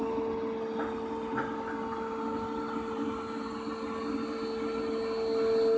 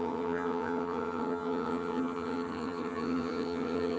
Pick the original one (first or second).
first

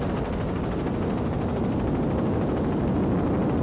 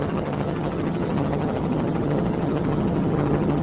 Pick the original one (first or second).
first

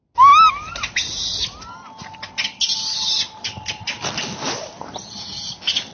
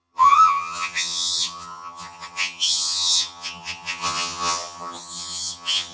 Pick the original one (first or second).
first